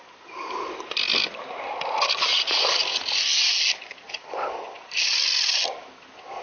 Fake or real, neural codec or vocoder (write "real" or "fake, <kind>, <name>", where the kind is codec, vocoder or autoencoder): real